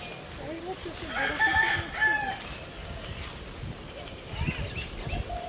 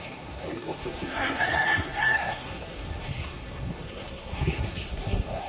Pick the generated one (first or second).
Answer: second